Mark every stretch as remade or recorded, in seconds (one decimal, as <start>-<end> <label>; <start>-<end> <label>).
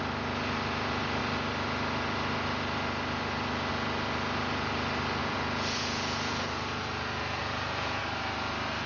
0.0-5.2 recorded; 5.2-8.0 remade; 8.0-8.9 recorded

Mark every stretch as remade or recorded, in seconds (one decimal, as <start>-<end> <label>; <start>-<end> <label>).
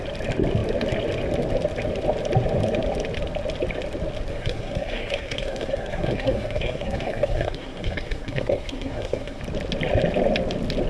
0.0-4.3 recorded; 4.3-9.4 remade; 9.4-10.9 recorded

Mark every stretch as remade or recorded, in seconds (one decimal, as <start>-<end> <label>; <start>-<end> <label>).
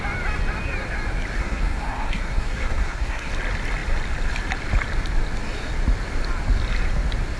0.0-1.4 recorded; 1.4-3.3 remade; 3.3-7.4 recorded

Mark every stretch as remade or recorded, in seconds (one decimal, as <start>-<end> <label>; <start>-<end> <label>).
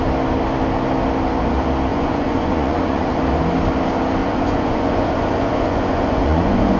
0.0-1.9 recorded; 1.9-3.2 remade; 3.2-4.2 recorded; 4.2-6.8 remade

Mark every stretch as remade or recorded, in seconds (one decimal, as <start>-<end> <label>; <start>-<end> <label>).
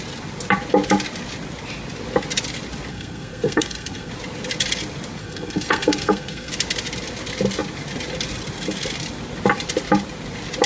0.0-2.9 recorded; 2.9-4.1 remade; 4.1-5.2 recorded; 5.2-6.5 remade; 6.5-10.7 recorded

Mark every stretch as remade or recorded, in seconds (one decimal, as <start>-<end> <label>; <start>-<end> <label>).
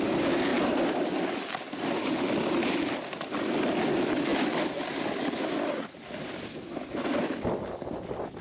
0.0-8.4 recorded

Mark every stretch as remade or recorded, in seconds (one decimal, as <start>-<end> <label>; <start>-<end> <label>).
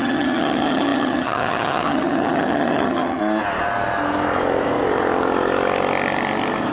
0.0-3.2 remade; 3.2-6.7 recorded